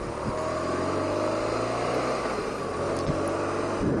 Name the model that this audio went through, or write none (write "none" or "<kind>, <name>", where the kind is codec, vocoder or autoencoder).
none